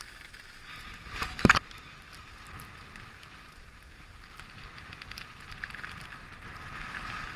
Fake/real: real